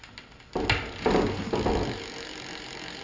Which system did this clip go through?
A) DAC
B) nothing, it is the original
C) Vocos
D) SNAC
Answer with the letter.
B